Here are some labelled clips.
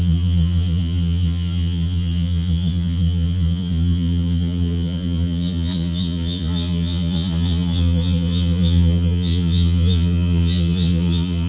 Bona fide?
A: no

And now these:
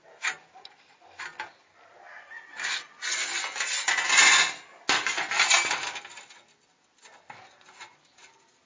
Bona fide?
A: yes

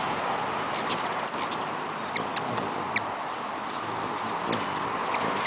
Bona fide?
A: yes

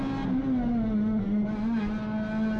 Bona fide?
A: yes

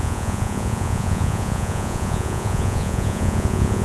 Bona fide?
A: no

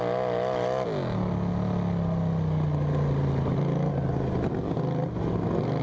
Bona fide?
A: yes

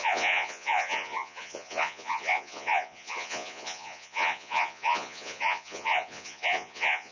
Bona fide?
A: no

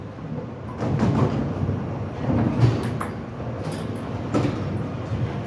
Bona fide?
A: yes